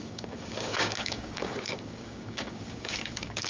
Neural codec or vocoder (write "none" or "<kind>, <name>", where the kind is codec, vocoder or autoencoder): codec, DAC